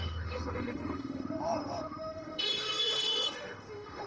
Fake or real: fake